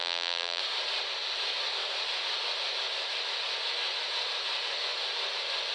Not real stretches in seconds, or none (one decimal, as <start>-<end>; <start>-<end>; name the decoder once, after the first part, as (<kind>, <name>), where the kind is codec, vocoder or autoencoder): 0.0-0.6 (vocoder, BigVGAN v2)